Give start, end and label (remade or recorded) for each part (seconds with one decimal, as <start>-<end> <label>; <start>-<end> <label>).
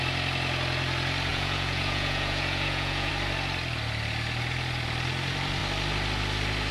0.0-1.3 recorded; 1.3-3.1 remade; 3.1-6.7 recorded